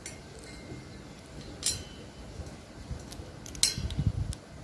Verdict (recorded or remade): recorded